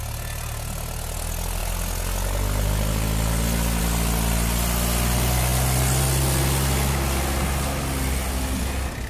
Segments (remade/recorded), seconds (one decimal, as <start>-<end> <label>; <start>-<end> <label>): 0.0-9.1 recorded